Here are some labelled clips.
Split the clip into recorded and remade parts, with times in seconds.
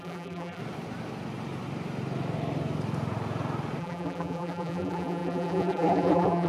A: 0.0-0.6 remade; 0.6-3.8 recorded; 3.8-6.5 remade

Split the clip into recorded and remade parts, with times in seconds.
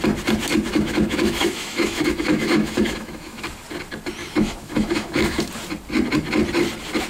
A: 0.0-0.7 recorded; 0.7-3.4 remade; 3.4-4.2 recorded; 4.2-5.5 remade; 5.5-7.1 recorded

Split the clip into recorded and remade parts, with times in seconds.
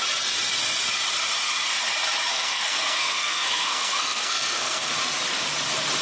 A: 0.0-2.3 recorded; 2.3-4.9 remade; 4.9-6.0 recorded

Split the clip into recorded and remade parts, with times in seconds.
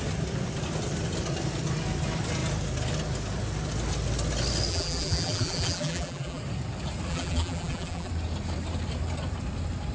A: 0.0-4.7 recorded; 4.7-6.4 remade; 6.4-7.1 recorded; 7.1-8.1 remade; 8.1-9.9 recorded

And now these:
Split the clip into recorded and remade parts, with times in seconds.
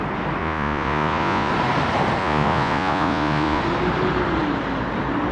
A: 0.0-0.4 recorded; 0.4-1.5 remade; 1.5-2.2 recorded; 2.2-3.6 remade; 3.6-5.3 recorded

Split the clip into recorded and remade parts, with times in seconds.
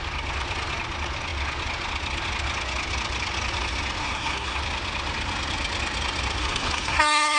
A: 0.0-4.0 recorded; 4.0-4.6 remade; 4.6-6.4 recorded; 6.4-7.4 remade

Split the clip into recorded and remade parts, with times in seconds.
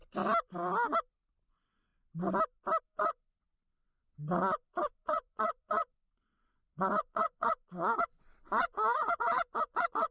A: 0.0-1.5 recorded; 1.5-1.9 remade; 1.9-2.8 recorded; 2.8-10.1 remade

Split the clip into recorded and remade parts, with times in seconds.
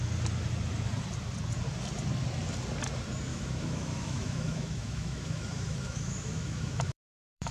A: 0.0-3.3 recorded; 3.3-7.5 remade